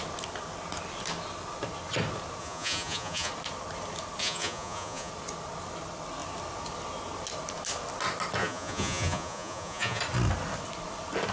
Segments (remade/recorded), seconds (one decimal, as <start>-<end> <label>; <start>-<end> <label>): 0.0-2.4 recorded; 2.4-3.3 remade; 3.3-4.2 recorded; 4.2-5.1 remade; 5.1-8.4 recorded; 8.4-10.0 remade; 10.0-11.3 recorded